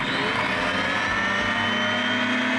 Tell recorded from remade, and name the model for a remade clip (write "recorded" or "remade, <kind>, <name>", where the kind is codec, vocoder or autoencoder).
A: recorded